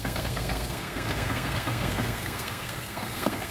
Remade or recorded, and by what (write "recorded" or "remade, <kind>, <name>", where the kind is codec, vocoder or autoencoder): remade, codec, SNAC